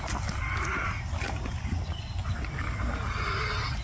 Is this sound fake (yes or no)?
no